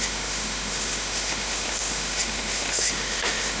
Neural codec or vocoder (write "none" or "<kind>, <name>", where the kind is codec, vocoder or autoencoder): autoencoder, DAC-VAE